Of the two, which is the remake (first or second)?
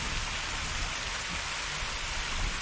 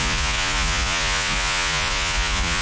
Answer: second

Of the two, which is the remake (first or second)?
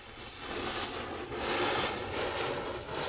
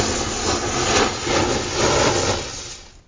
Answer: first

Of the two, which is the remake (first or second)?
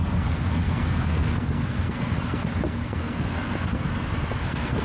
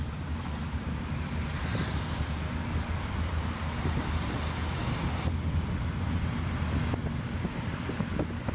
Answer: first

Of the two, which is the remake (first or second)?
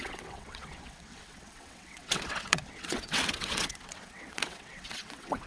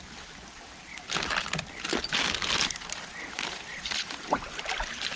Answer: first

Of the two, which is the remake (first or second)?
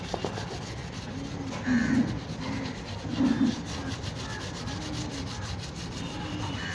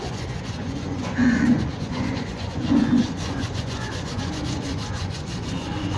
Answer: second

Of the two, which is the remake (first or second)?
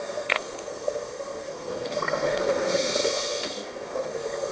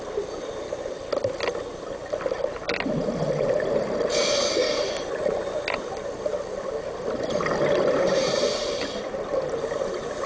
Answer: first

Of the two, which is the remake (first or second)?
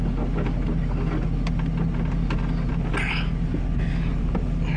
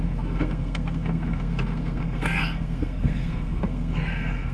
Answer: second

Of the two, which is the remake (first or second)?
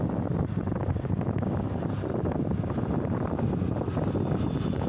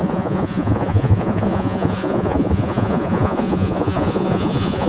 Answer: second